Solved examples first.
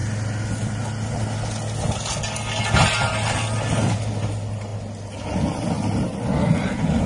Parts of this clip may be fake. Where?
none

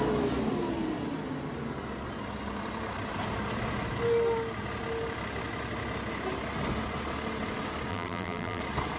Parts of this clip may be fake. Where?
7.9-8.6

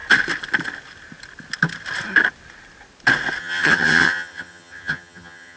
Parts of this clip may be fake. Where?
3.4-5.6

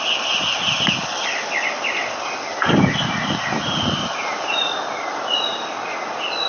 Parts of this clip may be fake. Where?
none

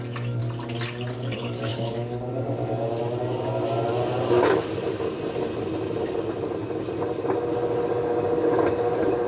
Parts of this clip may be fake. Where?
0.0-0.4; 1.1-3.0; 7.9-9.3

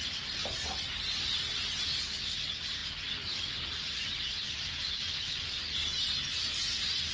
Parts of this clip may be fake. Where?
0.4-1.8; 2.8-5.4; 5.9-6.6

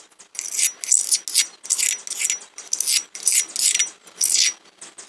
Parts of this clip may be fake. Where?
none

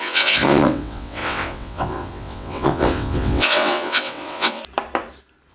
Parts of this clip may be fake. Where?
0.0-4.6